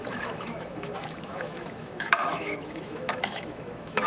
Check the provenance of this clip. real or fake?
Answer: fake